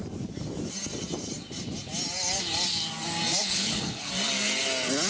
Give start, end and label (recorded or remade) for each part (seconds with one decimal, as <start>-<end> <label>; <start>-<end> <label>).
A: 0.0-3.4 recorded; 3.4-4.1 remade; 4.1-5.1 recorded